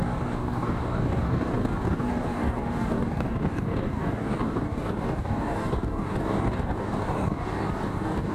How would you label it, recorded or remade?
remade